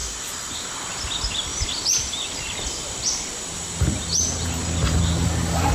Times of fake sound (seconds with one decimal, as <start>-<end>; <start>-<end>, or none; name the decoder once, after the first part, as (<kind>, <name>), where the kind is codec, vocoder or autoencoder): 1.5-4.0 (vocoder, BigVGAN v2)